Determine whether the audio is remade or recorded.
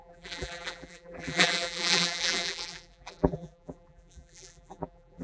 remade